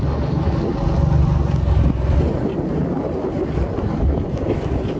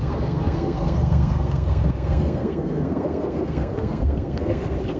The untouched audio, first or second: first